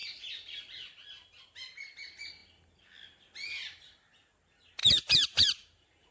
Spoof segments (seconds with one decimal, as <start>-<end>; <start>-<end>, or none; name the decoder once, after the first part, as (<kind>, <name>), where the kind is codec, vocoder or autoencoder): 0.0-0.6 (vocoder, BigVGAN v2); 4.8-6.1